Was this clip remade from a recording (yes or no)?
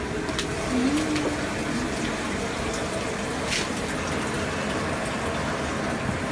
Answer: no